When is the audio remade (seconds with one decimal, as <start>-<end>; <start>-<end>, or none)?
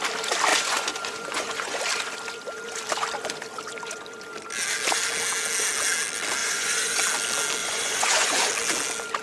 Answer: 0.5-1.8; 6.4-7.0; 7.6-8.5